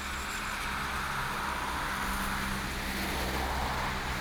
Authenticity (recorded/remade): recorded